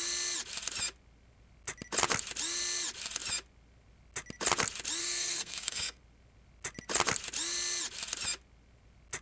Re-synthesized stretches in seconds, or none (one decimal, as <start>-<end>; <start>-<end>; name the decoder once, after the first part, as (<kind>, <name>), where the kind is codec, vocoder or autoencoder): 5.0-6.0 (codec, SNAC)